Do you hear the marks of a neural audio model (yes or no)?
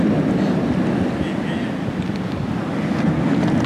no